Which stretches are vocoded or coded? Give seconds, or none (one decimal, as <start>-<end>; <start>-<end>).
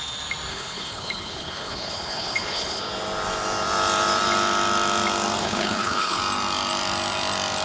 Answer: 0.5-2.8; 5.4-6.2